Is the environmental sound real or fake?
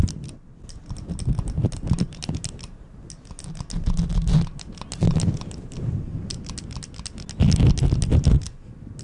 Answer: real